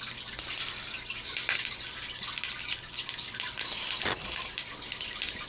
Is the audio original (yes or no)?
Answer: yes